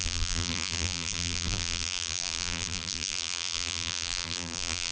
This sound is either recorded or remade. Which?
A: remade